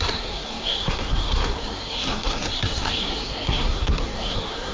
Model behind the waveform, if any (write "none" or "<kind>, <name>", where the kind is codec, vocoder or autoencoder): codec, SNAC